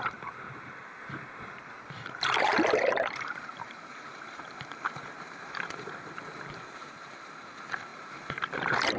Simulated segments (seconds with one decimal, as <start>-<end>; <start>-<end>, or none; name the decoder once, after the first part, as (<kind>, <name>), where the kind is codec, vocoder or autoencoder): 0.0-9.0 (vocoder, BigVGAN v2)